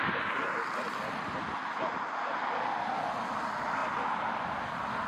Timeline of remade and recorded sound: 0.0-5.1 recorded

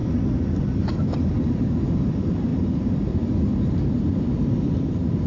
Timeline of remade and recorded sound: 0.0-5.3 remade

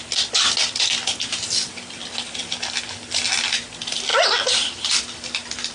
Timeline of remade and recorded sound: 0.0-5.7 recorded

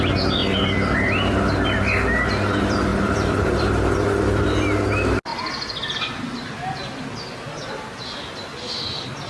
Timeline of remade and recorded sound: 0.0-2.9 recorded; 2.9-3.8 remade; 3.8-9.3 recorded